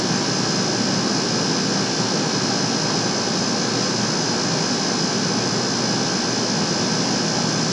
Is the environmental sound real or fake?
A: real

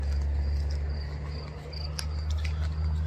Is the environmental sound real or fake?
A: real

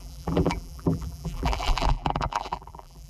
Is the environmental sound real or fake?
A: fake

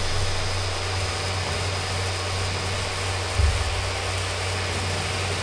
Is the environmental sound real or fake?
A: real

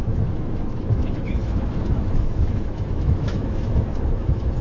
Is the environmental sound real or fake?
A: fake